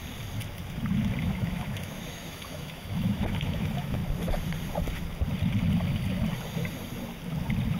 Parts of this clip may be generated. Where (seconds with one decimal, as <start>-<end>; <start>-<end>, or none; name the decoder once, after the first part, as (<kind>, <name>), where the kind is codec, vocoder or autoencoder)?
1.2-4.0 (autoencoder, DAC-VAE)